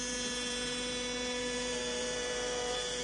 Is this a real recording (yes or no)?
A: no